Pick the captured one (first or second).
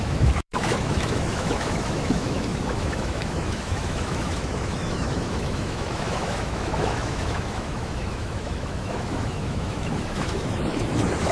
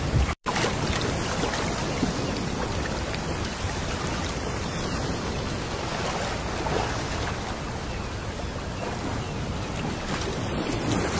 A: second